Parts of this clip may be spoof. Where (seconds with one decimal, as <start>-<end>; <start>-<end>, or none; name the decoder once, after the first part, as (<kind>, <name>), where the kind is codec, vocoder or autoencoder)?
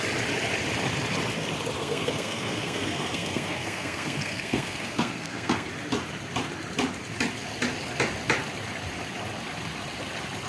1.8-5.7 (codec, SNAC)